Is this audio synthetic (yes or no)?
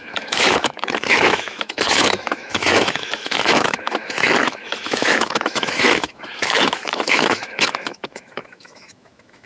yes